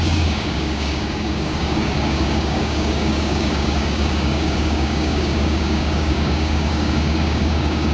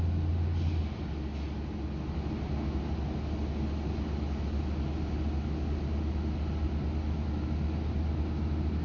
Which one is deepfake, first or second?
first